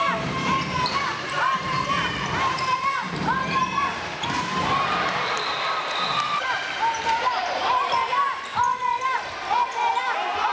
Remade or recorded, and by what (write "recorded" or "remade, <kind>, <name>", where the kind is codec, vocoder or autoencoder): remade, vocoder, BigVGAN v2